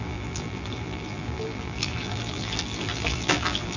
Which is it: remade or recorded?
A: remade